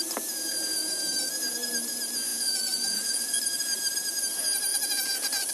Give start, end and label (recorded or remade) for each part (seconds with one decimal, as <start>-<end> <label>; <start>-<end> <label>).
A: 0.0-2.3 recorded; 2.3-3.4 remade; 3.4-4.7 recorded; 4.7-5.5 remade